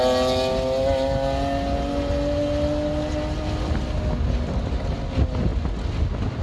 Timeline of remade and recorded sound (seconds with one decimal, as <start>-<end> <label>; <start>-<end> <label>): 0.0-6.4 recorded

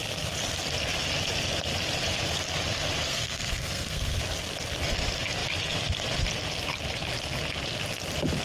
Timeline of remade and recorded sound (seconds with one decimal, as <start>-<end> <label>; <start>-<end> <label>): 0.0-3.1 recorded; 3.1-4.2 remade; 4.2-8.4 recorded

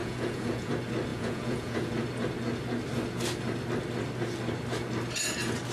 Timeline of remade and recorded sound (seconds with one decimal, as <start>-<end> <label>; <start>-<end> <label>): 0.0-0.7 remade; 0.7-1.1 recorded; 1.1-1.9 remade; 1.9-5.7 recorded

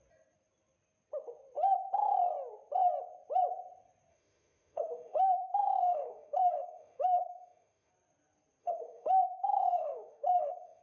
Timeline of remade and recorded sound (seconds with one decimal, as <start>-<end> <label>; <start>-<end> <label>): 0.0-4.1 recorded; 4.1-7.9 remade; 7.9-8.6 recorded; 8.6-10.8 remade

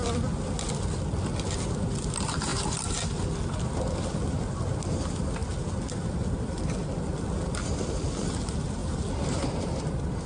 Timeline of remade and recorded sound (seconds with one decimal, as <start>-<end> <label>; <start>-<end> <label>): 0.0-10.3 recorded

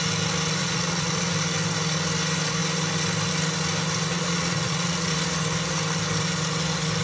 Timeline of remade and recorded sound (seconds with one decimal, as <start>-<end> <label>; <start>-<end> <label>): 0.0-0.6 recorded; 0.6-1.3 remade; 1.3-4.1 recorded; 4.1-5.1 remade; 5.1-7.0 recorded

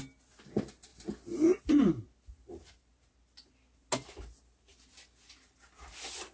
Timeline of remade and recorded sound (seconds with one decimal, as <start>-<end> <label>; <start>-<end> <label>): 0.0-6.3 recorded

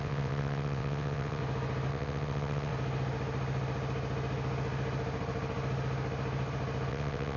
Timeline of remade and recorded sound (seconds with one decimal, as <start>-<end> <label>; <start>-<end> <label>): 0.0-1.4 remade; 1.4-1.9 recorded; 1.9-2.7 remade; 2.7-6.9 recorded; 6.9-7.4 remade